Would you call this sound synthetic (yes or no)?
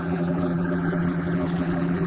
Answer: yes